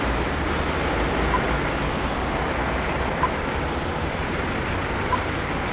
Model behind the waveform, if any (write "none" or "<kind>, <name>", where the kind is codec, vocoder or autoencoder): none